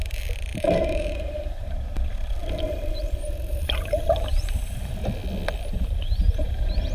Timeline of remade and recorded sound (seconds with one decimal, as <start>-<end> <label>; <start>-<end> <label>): 0.0-5.0 remade; 5.0-5.7 recorded; 5.7-6.9 remade